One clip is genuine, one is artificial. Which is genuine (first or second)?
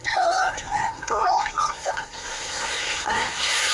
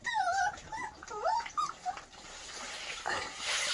second